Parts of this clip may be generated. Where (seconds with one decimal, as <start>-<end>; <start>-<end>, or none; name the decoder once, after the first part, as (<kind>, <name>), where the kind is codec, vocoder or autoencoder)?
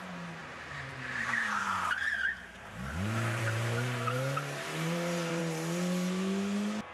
0.4-1.6 (vocoder, BigVGAN v2); 2.0-5.4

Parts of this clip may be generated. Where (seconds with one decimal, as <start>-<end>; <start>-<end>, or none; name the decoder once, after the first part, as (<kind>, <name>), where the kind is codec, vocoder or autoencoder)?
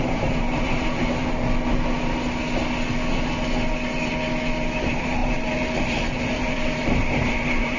0.0-1.2 (vocoder, BigVGAN v2); 4.8-7.8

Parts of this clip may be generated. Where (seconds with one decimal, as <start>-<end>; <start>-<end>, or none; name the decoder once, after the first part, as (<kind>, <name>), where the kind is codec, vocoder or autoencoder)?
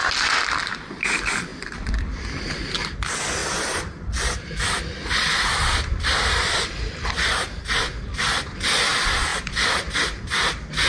1.5-2.2 (vocoder, BigVGAN v2); 3.4-7.6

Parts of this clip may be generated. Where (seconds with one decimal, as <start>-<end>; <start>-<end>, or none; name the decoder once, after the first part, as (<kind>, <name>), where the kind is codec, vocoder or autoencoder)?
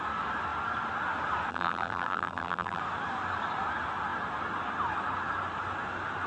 1.5-2.8 (vocoder, BigVGAN v2)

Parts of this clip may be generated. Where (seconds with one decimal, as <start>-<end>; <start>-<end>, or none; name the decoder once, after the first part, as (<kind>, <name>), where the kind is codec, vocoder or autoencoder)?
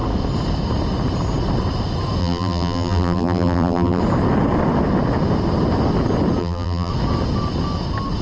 2.2-4.0 (vocoder, BigVGAN v2); 6.4-6.9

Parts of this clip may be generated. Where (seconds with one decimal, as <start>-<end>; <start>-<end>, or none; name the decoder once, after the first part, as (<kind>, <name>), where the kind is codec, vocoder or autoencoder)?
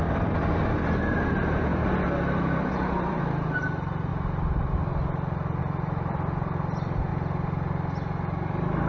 0.0-1.7 (vocoder, BigVGAN v2); 2.7-4.1; 5.6-7.1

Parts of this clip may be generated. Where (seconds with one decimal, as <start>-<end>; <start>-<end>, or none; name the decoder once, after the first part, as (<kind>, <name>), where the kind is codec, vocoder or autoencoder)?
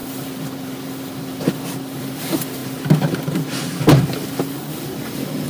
0.0-2.6 (vocoder, BigVGAN v2); 4.7-5.5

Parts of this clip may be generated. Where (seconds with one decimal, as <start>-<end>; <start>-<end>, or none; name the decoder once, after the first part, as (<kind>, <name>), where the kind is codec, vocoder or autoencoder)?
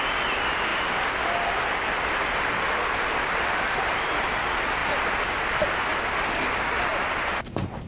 6.9-7.9 (vocoder, BigVGAN v2)